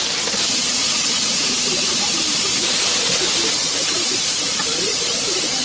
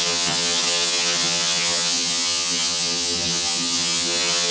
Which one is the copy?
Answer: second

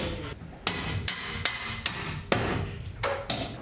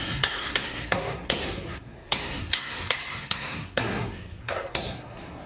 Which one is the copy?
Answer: second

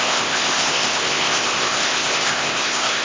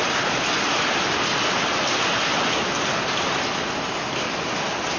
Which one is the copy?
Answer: first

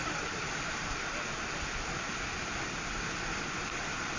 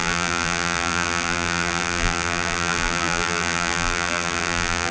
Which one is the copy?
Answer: second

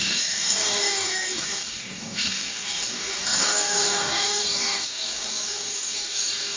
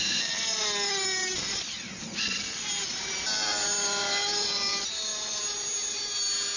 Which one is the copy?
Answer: first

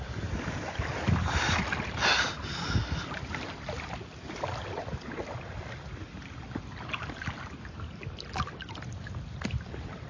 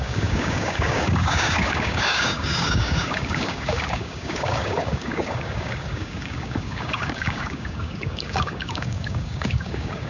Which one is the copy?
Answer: second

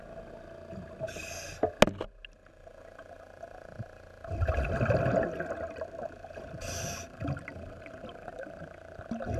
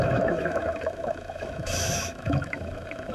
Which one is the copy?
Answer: second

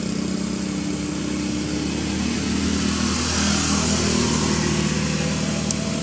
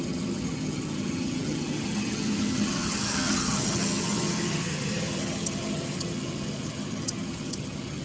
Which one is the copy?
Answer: second